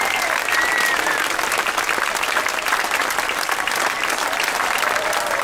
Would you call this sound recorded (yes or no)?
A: no